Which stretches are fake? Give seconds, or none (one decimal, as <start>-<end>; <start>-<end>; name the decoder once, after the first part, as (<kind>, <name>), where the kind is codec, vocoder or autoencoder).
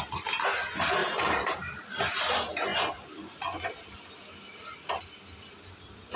1.0-1.8 (vocoder, BigVGAN v2)